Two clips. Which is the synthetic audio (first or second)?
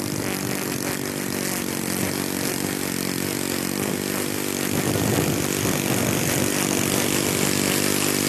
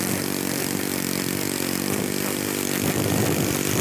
second